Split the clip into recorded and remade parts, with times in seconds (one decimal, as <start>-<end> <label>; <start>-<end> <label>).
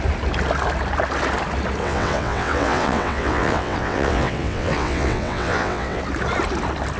0.0-1.8 recorded; 1.8-6.0 remade; 6.0-7.0 recorded